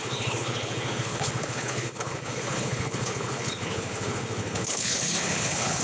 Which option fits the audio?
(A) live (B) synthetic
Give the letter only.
B